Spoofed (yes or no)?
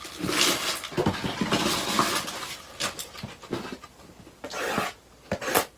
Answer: no